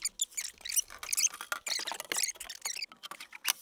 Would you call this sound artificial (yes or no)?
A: no